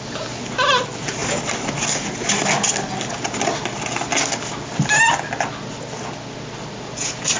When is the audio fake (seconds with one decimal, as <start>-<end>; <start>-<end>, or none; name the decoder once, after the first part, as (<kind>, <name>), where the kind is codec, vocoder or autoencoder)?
none